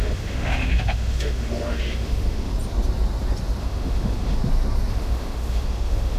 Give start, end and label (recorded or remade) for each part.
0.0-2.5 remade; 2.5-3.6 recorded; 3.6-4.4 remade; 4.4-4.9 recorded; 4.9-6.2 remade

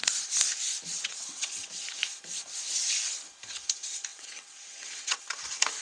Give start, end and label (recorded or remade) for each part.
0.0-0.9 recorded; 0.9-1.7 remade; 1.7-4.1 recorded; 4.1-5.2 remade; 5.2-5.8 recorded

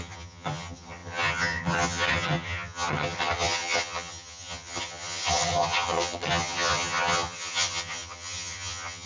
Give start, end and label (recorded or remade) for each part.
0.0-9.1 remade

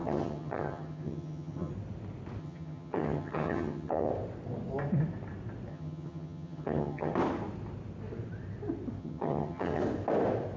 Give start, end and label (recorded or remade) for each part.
0.0-1.7 remade; 1.7-2.4 recorded; 2.4-4.1 remade; 4.1-5.7 recorded; 5.7-7.1 remade; 7.1-9.0 recorded; 9.0-9.8 remade; 9.8-10.6 recorded

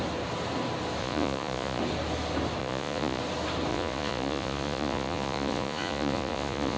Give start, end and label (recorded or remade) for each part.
0.0-1.0 recorded; 1.0-1.8 remade; 1.8-2.6 recorded; 2.6-3.2 remade; 3.2-3.7 recorded; 3.7-6.8 remade